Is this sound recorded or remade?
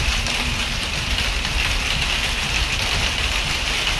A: recorded